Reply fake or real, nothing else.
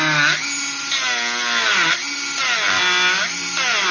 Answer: real